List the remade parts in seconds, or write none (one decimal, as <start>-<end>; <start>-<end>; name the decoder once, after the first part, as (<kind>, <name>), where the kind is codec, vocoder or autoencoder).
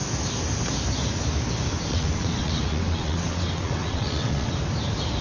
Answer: 1.9-4.6 (vocoder, WaveNeXt)